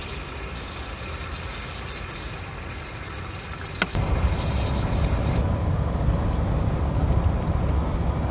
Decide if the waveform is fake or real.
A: real